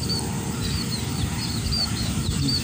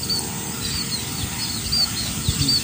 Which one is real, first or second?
second